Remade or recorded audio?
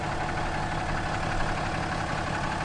recorded